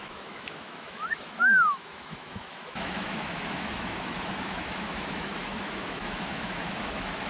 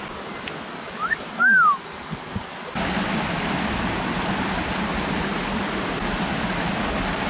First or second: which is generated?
first